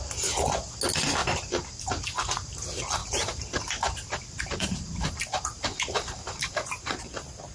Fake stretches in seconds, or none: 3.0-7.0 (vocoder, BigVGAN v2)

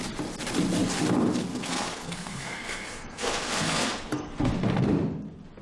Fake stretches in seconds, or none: 1.5-4.5 (codec, SNAC)

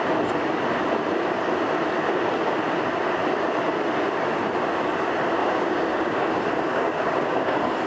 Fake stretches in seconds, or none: 5.4-6.3 (codec, DAC); 6.7-7.5